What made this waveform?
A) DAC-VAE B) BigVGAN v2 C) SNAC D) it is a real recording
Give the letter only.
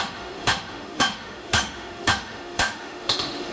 A